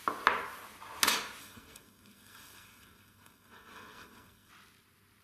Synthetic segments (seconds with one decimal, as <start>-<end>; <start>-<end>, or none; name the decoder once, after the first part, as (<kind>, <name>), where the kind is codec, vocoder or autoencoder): 1.4-4.5 (codec, SNAC)